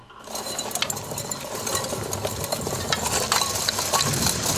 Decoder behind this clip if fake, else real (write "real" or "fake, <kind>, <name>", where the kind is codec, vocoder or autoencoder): real